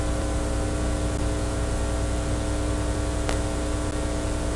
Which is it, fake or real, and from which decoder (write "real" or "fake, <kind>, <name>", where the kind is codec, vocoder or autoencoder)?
real